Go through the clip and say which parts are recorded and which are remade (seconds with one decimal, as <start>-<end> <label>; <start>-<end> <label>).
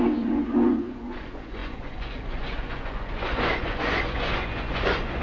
0.0-5.2 remade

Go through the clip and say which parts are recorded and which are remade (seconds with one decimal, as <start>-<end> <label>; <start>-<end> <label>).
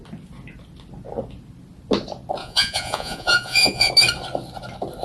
0.0-2.4 recorded; 2.4-3.9 remade; 3.9-5.0 recorded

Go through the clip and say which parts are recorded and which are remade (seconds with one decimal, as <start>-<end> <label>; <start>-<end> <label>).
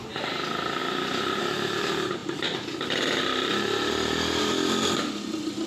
0.0-5.7 recorded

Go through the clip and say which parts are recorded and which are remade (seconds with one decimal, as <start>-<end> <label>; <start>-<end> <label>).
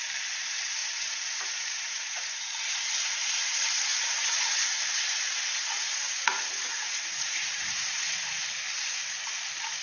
0.0-0.8 recorded; 0.8-3.3 remade; 3.3-3.9 recorded; 3.9-8.4 remade; 8.4-9.8 recorded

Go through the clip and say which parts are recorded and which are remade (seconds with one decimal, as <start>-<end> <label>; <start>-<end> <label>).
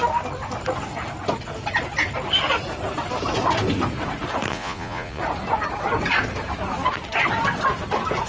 0.0-4.5 recorded; 4.5-5.2 remade; 5.2-8.3 recorded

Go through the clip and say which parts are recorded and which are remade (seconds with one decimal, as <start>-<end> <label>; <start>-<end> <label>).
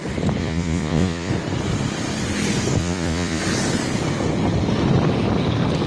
0.0-0.4 recorded; 0.4-1.3 remade; 1.3-2.8 recorded; 2.8-3.4 remade; 3.4-5.9 recorded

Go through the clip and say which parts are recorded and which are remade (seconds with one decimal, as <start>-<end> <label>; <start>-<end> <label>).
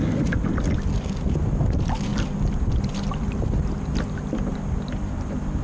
0.0-5.6 recorded